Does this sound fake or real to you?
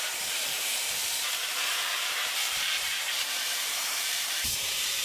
fake